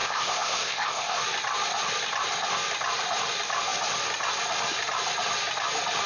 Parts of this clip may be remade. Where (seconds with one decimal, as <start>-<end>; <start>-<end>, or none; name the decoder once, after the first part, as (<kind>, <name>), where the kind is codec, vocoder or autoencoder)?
0.0-1.2 (codec, ZipCodec)